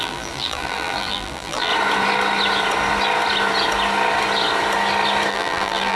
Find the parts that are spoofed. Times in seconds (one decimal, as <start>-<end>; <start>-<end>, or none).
0.0-1.7; 5.3-6.0